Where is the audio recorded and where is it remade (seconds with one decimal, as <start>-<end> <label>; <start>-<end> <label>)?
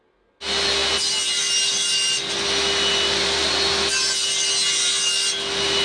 0.0-5.8 recorded